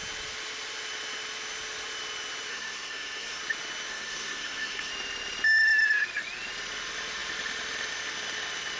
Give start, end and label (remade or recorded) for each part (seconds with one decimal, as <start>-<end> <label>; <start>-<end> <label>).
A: 0.0-2.5 recorded; 2.5-3.4 remade; 3.4-3.9 recorded; 3.9-4.9 remade; 4.9-8.8 recorded